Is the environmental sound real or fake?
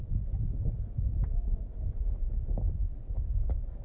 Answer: real